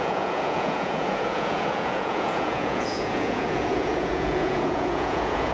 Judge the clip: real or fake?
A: fake